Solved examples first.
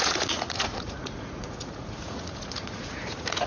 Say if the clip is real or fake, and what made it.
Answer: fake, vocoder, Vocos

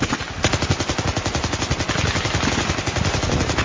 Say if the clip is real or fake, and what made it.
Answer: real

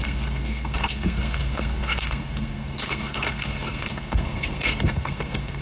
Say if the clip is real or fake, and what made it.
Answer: fake, codec, SNAC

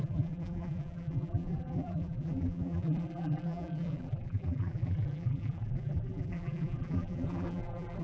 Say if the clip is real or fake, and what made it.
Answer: fake, vocoder, BigVGAN v2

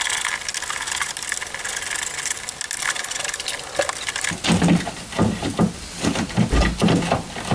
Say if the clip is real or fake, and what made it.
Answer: real